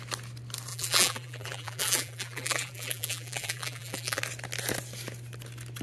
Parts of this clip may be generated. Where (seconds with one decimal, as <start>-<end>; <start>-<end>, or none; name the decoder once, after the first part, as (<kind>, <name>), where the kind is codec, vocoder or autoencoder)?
0.7-4.2 (vocoder, BigVGAN v2)